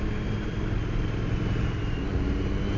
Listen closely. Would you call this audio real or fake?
real